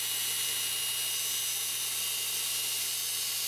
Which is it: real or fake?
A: real